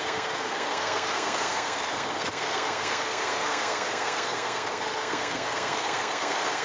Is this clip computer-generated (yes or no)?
yes